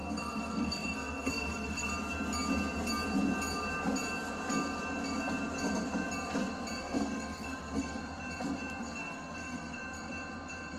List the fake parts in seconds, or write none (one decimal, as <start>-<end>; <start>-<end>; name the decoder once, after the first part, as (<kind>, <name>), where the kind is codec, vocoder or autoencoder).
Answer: 0.0-1.9 (codec, SNAC); 6.8-8.0; 8.8-9.8